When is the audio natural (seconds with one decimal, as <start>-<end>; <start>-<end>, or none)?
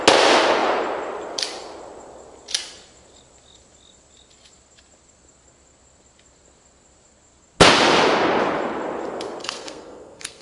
0.0-9.4